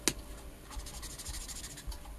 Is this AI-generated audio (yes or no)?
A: no